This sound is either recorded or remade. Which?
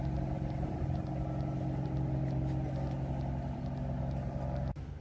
recorded